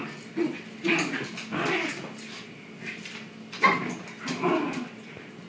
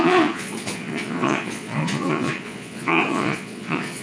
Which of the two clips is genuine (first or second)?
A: first